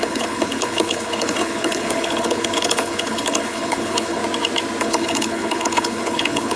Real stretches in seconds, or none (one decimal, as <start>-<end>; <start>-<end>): 4.2-4.8